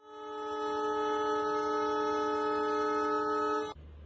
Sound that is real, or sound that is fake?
real